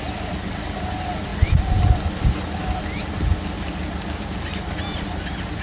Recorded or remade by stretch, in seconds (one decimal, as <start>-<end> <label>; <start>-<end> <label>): 0.0-1.3 remade; 1.3-4.7 recorded; 4.7-5.6 remade